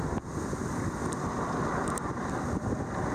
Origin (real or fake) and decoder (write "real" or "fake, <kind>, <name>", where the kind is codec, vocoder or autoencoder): real